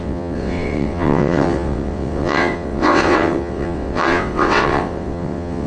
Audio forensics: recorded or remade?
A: remade